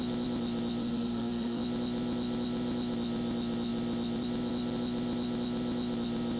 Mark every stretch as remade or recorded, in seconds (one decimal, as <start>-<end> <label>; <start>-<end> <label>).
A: 0.0-0.8 recorded; 0.8-1.6 remade; 1.6-6.4 recorded